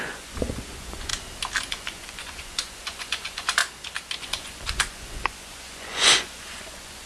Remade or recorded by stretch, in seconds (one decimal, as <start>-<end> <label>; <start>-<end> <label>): 0.0-1.1 remade; 1.1-1.7 recorded; 1.7-3.6 remade; 3.6-4.2 recorded; 4.2-7.1 remade